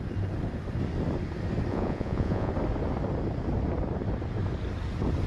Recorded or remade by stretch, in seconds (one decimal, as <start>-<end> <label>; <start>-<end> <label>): 0.0-1.7 recorded; 1.7-2.5 remade; 2.5-5.3 recorded